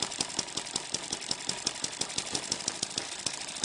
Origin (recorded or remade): recorded